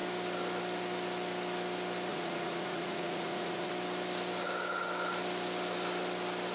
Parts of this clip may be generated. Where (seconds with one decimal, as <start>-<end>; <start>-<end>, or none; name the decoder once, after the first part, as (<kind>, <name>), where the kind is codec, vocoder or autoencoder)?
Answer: 2.1-3.7 (vocoder, Vocos)